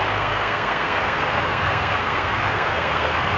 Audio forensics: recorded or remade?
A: remade